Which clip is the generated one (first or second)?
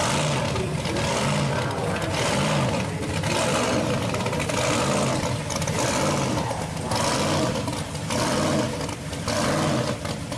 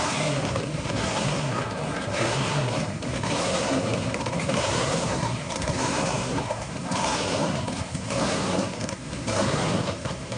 second